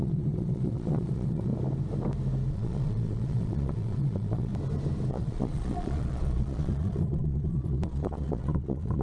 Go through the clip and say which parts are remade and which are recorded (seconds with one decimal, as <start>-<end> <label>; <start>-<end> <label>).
0.0-1.5 remade; 1.5-2.5 recorded; 2.5-4.5 remade; 4.5-5.1 recorded; 5.1-9.0 remade